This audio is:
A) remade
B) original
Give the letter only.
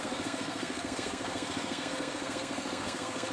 A